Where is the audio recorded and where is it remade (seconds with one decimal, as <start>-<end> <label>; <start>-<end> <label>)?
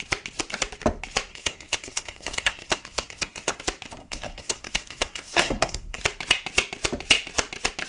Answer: 0.0-1.3 recorded; 1.3-3.6 remade; 3.6-4.0 recorded; 4.0-6.0 remade; 6.0-7.9 recorded